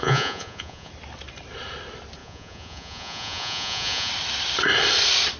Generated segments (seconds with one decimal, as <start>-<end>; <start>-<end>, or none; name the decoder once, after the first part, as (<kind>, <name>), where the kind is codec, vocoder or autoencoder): 0.0-0.9 (vocoder, Vocos); 2.2-4.1